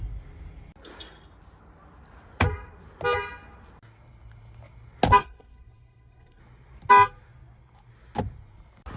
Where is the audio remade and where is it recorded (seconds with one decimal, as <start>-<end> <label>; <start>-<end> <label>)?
0.0-5.2 recorded; 5.2-6.4 remade; 6.4-9.0 recorded